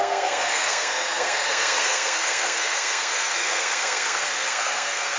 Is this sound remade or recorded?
remade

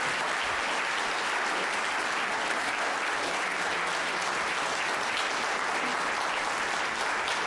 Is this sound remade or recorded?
recorded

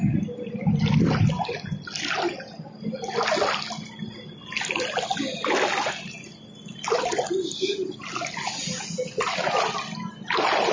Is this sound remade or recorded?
recorded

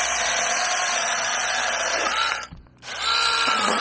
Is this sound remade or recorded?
remade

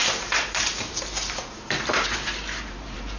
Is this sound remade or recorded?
remade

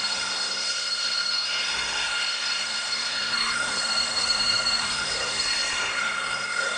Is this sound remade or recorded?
remade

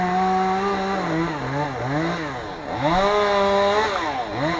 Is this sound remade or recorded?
recorded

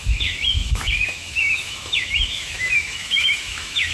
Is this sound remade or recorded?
remade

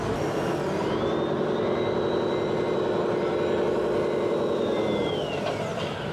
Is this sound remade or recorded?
recorded